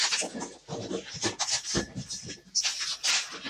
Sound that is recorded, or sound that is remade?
recorded